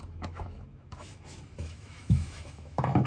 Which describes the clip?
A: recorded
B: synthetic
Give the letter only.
B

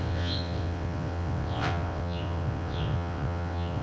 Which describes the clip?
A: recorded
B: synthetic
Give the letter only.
B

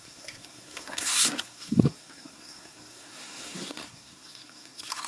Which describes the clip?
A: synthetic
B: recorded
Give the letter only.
A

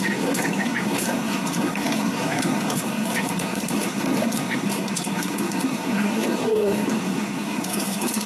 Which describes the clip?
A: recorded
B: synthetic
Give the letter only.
B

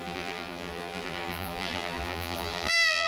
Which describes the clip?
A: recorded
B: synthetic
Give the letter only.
B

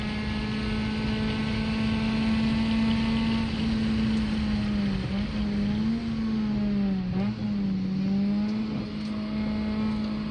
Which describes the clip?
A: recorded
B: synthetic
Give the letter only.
A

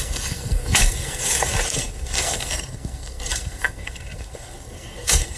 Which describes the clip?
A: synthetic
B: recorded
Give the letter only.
A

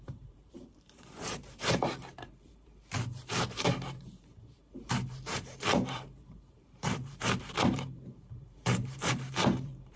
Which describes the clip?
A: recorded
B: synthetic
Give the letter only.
B